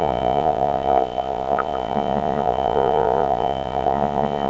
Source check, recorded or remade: remade